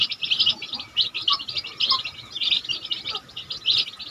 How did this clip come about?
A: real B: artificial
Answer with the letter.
A